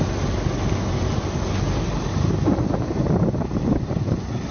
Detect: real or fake real